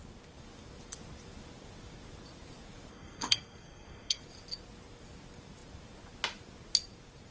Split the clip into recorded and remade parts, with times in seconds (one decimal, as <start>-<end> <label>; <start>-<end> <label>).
0.0-2.9 recorded; 2.9-4.2 remade; 4.2-7.3 recorded